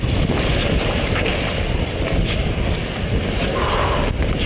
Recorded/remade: recorded